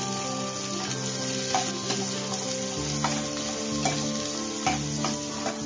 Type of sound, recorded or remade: recorded